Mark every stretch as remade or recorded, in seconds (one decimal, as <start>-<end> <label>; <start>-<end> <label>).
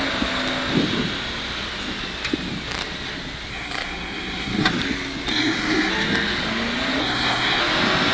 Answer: 0.0-3.5 recorded; 3.5-4.7 remade; 4.7-5.3 recorded; 5.3-5.9 remade; 5.9-7.0 recorded; 7.0-7.6 remade; 7.6-8.1 recorded